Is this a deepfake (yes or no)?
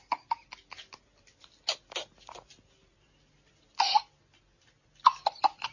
no